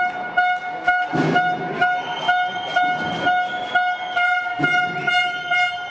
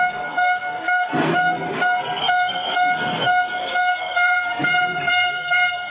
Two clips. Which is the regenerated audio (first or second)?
second